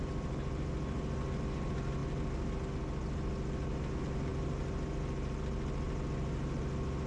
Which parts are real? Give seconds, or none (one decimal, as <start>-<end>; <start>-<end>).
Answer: 0.0-7.1